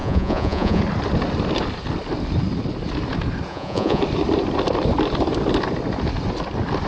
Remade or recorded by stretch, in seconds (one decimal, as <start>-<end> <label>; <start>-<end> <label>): 0.0-0.8 remade; 0.8-3.5 recorded; 3.5-4.0 remade; 4.0-6.9 recorded